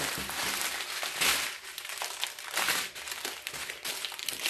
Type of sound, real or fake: real